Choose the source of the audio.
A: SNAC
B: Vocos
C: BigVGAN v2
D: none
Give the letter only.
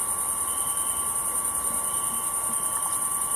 D